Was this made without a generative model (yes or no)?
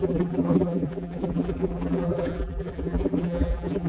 no